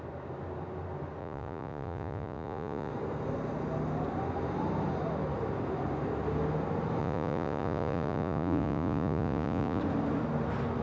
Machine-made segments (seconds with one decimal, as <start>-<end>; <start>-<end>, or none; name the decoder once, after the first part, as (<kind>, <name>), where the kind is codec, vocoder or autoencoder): 1.2-2.9 (vocoder, Vocos); 7.0-9.8